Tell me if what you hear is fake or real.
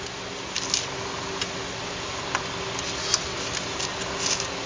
real